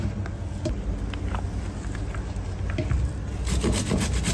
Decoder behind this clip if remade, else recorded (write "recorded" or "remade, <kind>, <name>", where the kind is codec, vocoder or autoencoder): recorded